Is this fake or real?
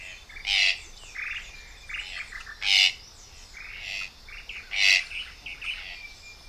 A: real